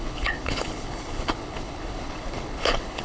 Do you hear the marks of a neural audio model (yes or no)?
yes